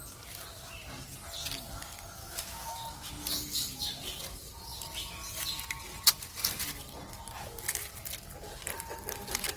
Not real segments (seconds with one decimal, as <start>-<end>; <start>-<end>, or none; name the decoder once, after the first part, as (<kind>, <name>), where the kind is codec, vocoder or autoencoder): 2.2-3.1 (autoencoder, DAC-VAE)